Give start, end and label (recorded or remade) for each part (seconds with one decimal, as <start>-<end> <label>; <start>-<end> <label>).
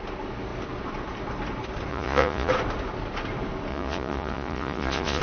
0.0-1.9 recorded; 1.9-2.5 remade; 2.5-3.7 recorded; 3.7-5.2 remade